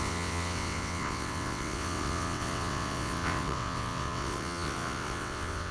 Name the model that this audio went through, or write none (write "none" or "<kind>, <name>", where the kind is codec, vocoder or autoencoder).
vocoder, WaveNeXt